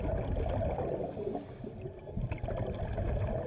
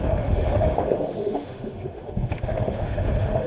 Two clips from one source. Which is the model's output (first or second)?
second